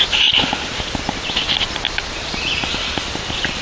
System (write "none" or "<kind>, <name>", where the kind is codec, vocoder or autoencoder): none